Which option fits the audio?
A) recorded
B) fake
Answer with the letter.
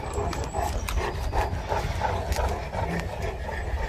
A